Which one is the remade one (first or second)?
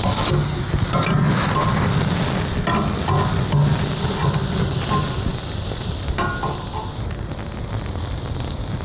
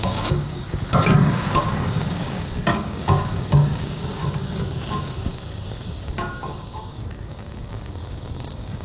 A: second